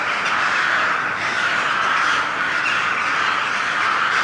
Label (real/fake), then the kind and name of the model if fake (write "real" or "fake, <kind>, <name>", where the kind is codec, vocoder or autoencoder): real